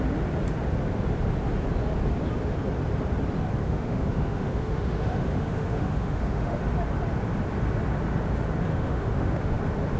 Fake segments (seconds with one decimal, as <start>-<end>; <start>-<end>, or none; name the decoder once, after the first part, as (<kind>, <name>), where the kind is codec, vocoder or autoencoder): 3.6-6.6 (autoencoder, DAC-VAE); 8.7-9.6